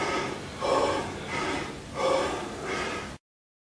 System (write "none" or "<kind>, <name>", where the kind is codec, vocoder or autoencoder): none